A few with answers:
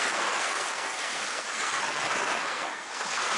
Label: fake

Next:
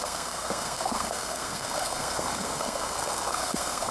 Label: fake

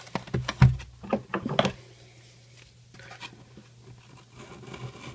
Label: real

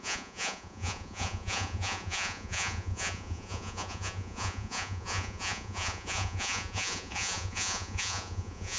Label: fake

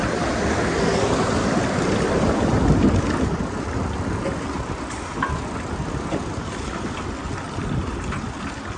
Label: real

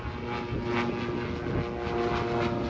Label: real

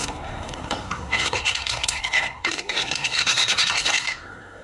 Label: fake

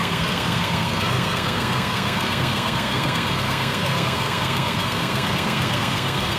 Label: fake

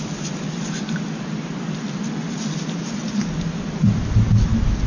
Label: real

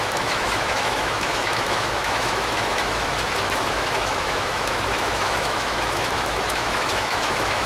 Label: fake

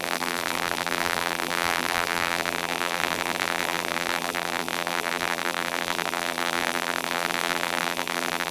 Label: fake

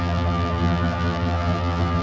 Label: fake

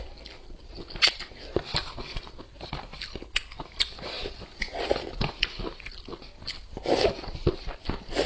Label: real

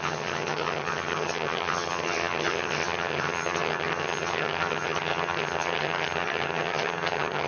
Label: fake